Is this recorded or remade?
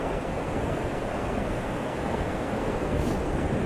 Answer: remade